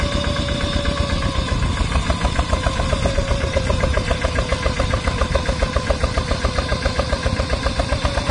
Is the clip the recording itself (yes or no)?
yes